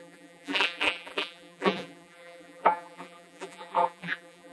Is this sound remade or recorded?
remade